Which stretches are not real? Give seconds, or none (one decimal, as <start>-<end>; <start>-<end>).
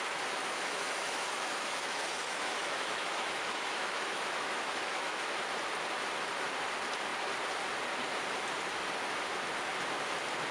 0.4-5.3